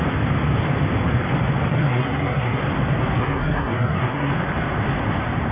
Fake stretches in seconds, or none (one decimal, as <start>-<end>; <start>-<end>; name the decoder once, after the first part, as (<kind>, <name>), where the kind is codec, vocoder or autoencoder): 1.7-2.6 (codec, SNAC); 3.2-4.3